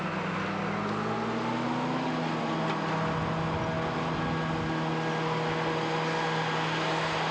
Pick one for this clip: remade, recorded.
recorded